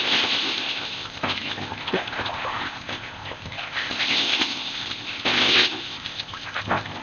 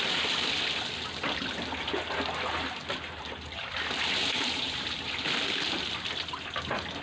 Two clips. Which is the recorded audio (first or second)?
second